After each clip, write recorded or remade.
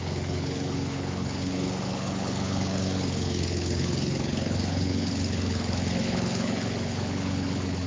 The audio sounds remade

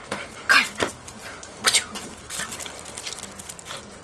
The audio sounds recorded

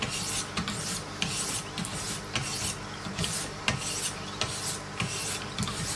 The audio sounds recorded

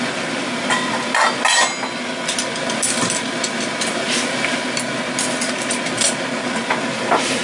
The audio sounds recorded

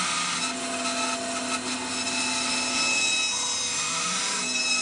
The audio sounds recorded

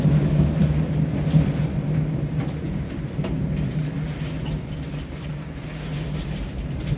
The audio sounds recorded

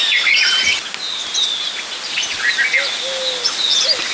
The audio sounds recorded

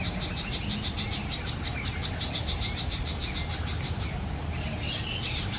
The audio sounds recorded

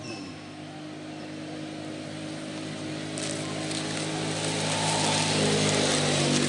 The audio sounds recorded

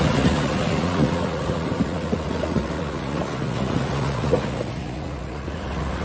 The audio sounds remade